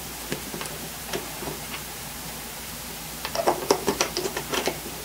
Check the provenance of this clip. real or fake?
fake